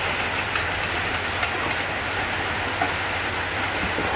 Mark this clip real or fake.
real